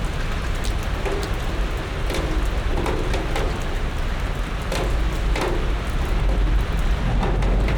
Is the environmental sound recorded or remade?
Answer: recorded